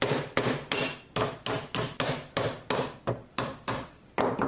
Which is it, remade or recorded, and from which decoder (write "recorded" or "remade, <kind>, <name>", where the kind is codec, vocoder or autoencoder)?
remade, vocoder, BigVGAN v2